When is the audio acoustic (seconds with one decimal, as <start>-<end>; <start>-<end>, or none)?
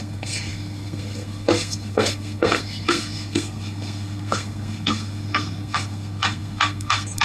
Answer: none